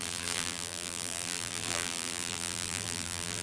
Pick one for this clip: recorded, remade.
remade